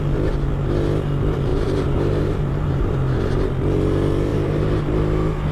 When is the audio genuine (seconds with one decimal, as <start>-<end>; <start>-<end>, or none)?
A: 0.0-1.5; 3.2-4.3; 4.8-5.5